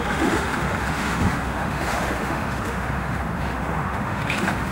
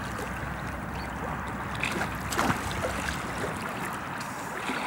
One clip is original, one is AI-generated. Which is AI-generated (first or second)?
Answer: first